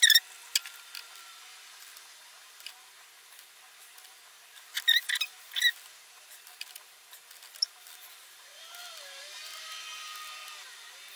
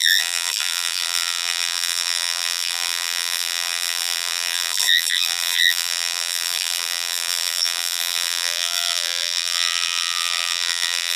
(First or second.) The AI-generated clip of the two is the second